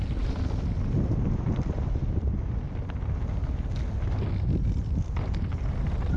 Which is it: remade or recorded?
recorded